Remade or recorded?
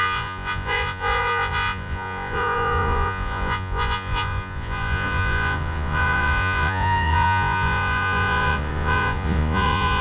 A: remade